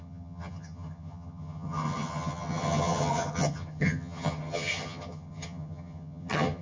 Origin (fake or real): fake